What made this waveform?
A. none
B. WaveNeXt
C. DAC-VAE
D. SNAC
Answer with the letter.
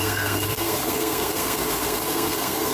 D